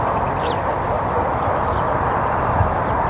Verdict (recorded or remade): recorded